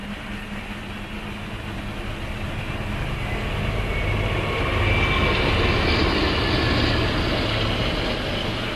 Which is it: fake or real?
real